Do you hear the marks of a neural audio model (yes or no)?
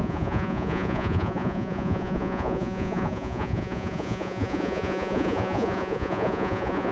yes